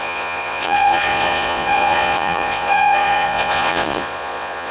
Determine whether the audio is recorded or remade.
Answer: remade